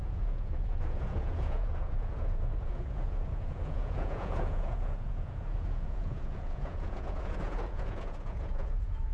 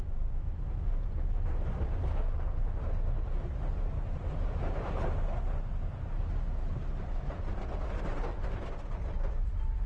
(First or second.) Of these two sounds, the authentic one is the second